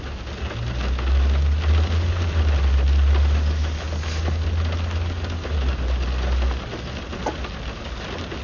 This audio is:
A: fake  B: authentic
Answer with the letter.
B